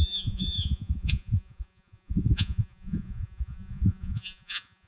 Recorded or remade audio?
remade